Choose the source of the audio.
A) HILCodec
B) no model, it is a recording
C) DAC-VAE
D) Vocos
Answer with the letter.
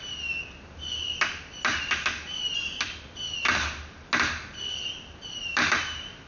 B